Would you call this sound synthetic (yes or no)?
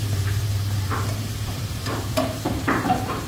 yes